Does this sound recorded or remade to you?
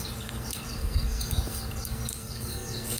remade